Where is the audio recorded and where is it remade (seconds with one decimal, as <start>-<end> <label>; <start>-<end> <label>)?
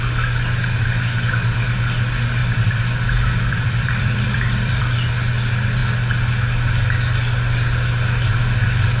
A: 0.0-2.4 recorded; 2.4-4.8 remade; 4.8-9.0 recorded